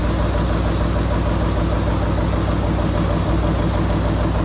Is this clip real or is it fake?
real